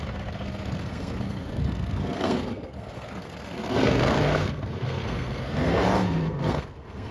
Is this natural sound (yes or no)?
no